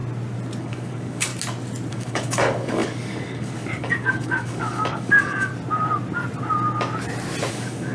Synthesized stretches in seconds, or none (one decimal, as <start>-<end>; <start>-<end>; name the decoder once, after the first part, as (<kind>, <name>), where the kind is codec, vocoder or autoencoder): 0.6-1.3 (codec, DAC); 1.9-5.5; 7.5-7.9